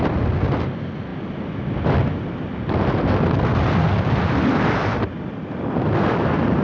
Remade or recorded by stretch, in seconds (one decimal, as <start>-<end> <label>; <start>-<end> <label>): 0.0-6.6 recorded